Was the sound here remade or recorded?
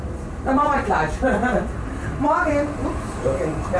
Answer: remade